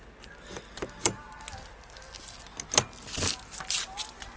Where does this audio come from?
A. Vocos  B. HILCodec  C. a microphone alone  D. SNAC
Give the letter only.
C